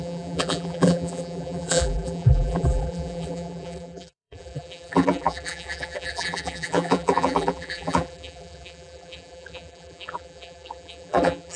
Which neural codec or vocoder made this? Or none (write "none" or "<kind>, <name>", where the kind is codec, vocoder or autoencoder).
vocoder, BigVGAN v2